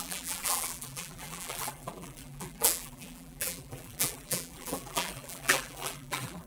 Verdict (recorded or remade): remade